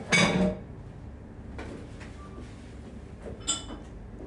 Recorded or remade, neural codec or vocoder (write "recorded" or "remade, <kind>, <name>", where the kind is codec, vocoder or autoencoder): recorded